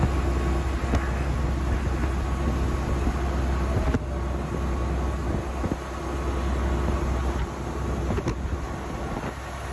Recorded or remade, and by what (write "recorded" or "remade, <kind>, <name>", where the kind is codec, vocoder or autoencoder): recorded